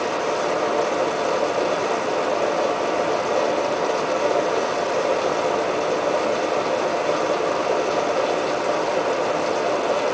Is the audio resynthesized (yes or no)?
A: no